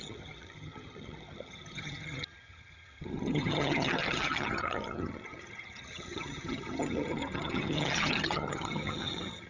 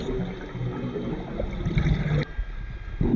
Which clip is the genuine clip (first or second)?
second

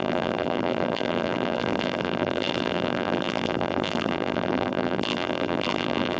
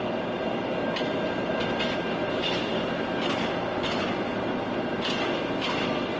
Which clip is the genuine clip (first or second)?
second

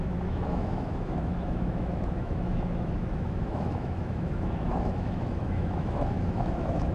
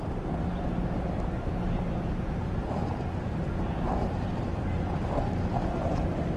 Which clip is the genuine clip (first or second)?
second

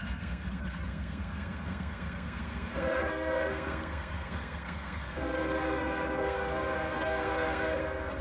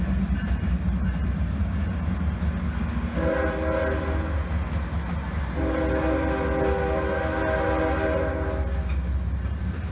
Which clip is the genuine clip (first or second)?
second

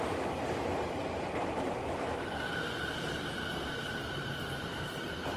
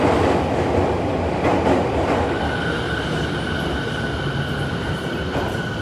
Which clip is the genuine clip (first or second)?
second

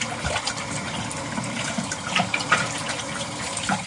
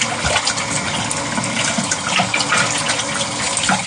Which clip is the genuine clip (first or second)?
second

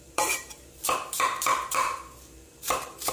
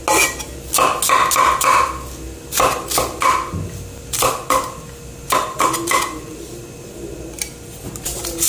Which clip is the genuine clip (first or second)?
second